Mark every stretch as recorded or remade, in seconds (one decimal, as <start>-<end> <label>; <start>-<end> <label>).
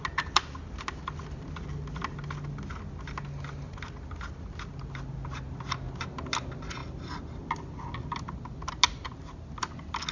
0.0-10.1 recorded